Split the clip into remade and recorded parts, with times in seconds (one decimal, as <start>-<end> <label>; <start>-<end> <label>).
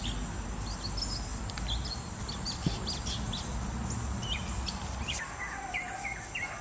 0.0-1.3 recorded; 1.3-2.2 remade; 2.2-6.6 recorded